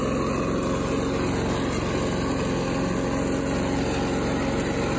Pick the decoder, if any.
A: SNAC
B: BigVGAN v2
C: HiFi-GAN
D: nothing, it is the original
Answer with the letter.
D